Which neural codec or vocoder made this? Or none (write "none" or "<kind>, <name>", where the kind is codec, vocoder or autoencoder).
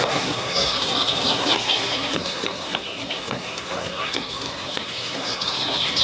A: codec, SNAC